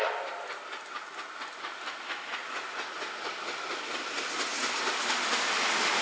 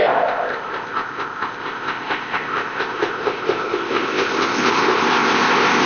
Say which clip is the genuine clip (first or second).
first